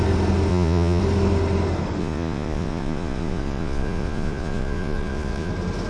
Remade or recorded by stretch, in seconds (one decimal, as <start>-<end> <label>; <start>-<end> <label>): 0.0-0.5 recorded; 0.5-1.0 remade; 1.0-2.0 recorded; 2.0-5.5 remade; 5.5-5.9 recorded